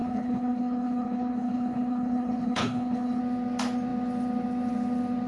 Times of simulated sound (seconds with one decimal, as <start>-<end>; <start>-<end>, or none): 0.0-3.2